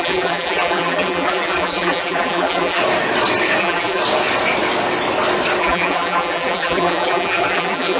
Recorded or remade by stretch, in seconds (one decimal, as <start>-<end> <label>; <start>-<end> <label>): 0.0-2.8 remade; 2.8-3.6 recorded; 3.6-4.0 remade; 4.0-5.6 recorded; 5.6-8.0 remade